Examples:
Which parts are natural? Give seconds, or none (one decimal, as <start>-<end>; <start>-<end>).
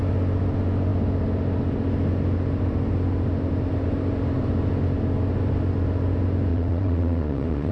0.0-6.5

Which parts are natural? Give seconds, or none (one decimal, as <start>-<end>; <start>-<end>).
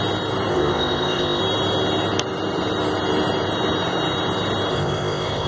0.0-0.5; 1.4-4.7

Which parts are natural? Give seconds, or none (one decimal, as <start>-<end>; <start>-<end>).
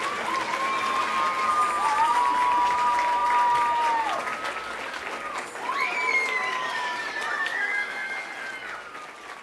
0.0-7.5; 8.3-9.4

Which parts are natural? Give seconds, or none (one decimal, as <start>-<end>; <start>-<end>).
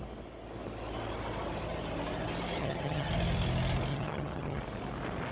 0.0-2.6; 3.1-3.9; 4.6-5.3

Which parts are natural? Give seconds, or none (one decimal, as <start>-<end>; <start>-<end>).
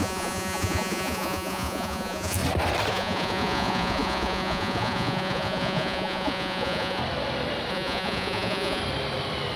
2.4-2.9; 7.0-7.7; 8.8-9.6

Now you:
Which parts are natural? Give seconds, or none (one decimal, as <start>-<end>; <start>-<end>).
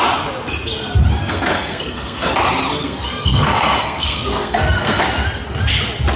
0.0-1.2; 2.3-2.8; 5.0-6.2